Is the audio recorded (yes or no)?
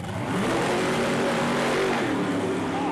no